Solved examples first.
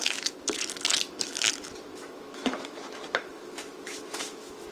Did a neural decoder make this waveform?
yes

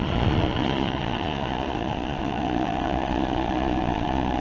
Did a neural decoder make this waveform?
yes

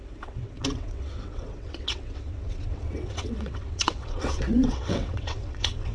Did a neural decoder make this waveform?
yes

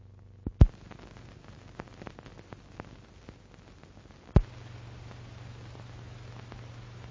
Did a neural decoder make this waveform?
no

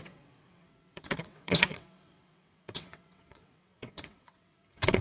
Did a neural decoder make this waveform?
yes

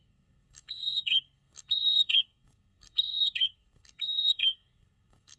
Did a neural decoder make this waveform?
yes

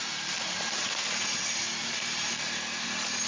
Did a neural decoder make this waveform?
no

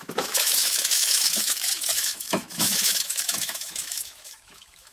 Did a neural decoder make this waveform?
yes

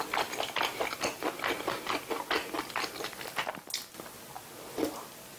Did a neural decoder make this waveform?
no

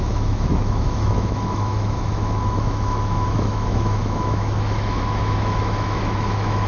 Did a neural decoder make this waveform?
yes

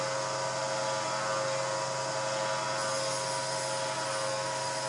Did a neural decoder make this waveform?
no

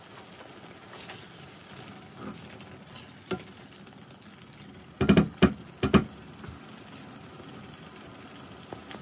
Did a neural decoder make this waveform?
no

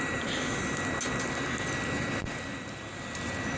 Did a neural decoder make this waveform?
no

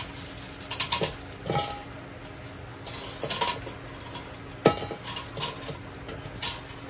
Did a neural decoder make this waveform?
no